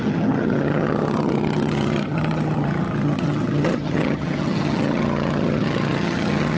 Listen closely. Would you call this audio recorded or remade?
remade